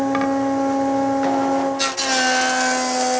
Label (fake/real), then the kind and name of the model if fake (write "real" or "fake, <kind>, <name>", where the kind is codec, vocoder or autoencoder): real